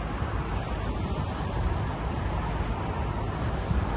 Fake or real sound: real